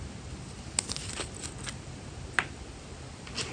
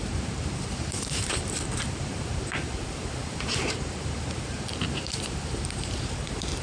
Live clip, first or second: first